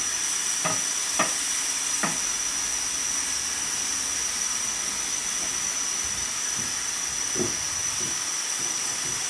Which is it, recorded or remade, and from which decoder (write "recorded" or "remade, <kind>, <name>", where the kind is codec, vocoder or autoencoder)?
recorded